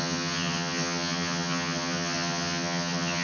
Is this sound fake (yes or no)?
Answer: yes